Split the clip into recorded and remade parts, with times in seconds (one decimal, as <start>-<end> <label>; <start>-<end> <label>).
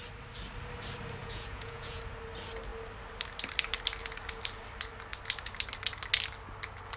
0.0-1.2 recorded; 1.2-2.0 remade; 2.0-7.0 recorded